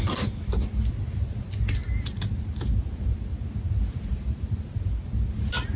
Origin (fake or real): real